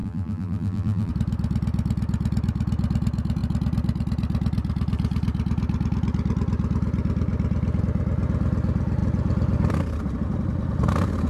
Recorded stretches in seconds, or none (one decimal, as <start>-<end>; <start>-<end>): 1.1-11.3